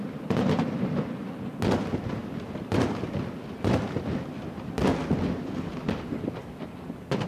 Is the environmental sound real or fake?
real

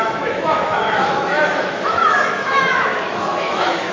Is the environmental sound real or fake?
fake